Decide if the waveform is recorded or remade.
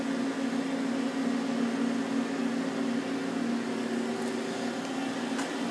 recorded